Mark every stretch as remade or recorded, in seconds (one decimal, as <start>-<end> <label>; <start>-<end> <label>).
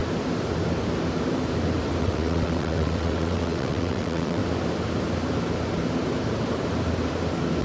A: 0.0-2.0 recorded; 2.0-4.4 remade; 4.4-7.6 recorded